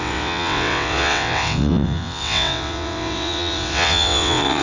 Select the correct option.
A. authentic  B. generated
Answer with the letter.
B